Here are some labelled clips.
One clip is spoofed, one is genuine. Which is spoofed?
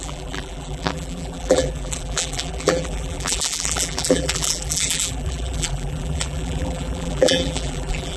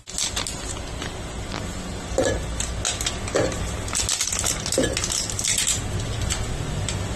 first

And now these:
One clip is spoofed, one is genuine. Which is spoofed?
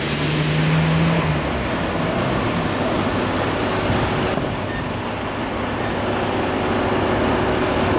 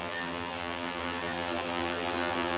second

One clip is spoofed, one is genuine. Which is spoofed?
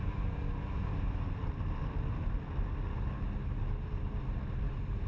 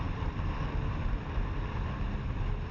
second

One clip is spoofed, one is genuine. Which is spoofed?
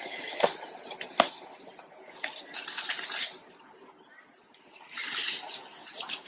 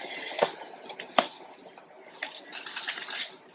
first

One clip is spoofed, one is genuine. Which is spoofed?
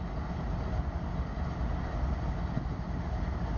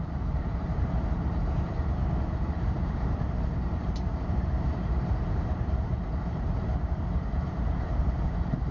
second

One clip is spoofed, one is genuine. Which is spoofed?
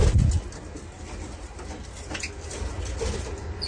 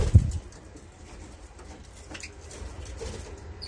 second